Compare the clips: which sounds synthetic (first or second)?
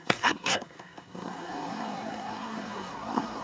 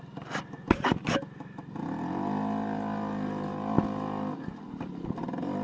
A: first